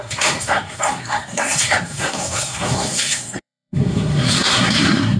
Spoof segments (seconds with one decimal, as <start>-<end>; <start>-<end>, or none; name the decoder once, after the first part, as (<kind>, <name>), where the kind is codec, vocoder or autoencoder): 0.0-5.2 (codec, SNAC)